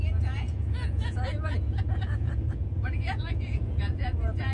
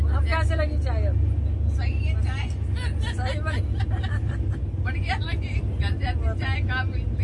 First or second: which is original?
second